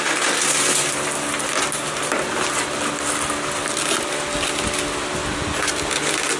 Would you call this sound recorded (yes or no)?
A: yes